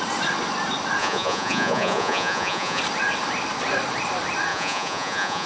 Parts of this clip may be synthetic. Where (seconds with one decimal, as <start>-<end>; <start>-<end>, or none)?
1.0-2.8; 4.5-5.5